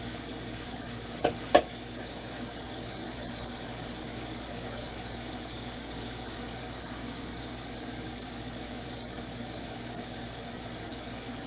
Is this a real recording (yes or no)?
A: no